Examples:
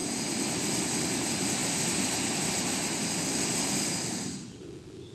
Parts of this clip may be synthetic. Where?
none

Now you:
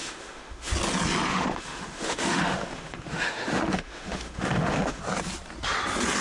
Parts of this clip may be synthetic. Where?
0.0-0.7 (autoencoder, DAC-VAE); 1.3-5.0

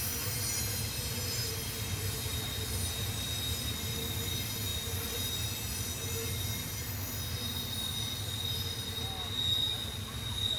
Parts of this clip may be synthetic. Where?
none

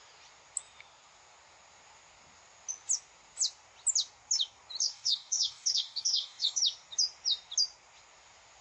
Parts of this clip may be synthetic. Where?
4.8-6.6 (codec, DAC)

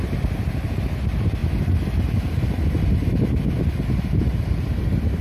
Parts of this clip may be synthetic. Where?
none

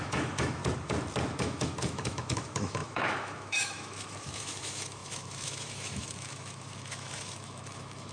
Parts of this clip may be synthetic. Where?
0.0-0.6 (autoencoder, DAC-VAE); 1.4-8.1